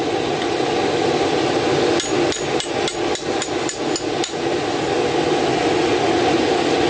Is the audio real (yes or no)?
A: yes